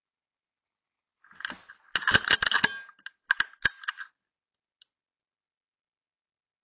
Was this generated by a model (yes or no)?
no